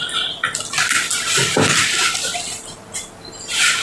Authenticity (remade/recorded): recorded